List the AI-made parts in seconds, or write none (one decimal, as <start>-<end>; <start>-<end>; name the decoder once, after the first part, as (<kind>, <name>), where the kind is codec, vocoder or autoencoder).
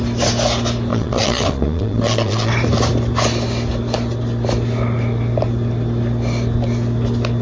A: 0.9-2.5 (vocoder, Vocos)